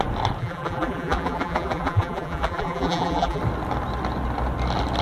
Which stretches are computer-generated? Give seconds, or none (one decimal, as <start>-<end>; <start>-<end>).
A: 0.4-3.4